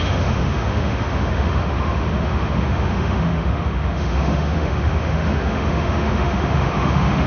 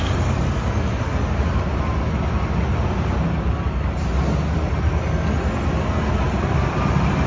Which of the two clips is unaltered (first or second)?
second